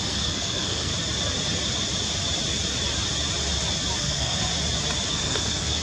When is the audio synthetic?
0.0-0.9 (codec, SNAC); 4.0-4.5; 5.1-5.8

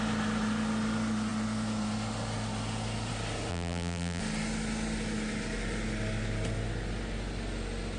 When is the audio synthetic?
3.5-4.2 (vocoder, BigVGAN v2)

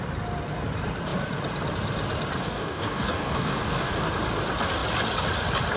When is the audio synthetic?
2.4-4.1 (codec, DAC)

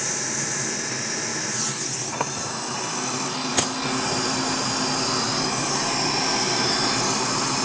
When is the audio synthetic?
none

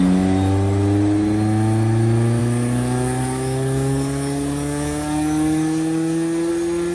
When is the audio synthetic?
2.4-6.5 (codec, DAC)

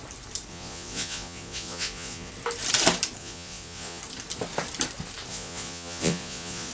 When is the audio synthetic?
0.5-2.3 (vocoder, Vocos); 3.2-4.0; 5.3-6.7

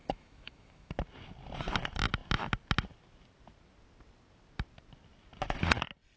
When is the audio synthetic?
0.0-0.9 (autoencoder, DAC-VAE)